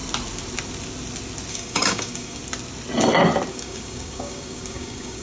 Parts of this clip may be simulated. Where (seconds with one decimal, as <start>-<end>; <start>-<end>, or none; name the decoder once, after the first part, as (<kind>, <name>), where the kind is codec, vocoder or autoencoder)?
1.5-2.4 (codec, DAC); 3.5-5.2